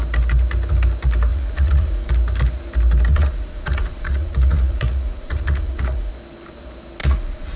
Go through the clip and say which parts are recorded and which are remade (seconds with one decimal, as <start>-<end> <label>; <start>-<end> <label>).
0.0-1.3 recorded; 1.3-2.1 remade; 2.1-3.1 recorded; 3.1-6.1 remade; 6.1-7.0 recorded; 7.0-7.6 remade